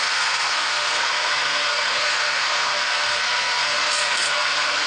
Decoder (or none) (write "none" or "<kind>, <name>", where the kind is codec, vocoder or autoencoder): codec, SNAC